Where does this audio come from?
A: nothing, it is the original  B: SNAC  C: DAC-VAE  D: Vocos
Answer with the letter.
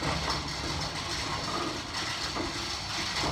A